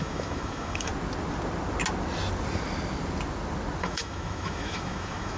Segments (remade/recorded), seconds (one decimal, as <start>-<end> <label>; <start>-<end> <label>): 0.0-0.9 remade; 0.9-3.8 recorded; 3.8-5.4 remade